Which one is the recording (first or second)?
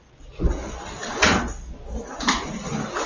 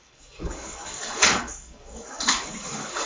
first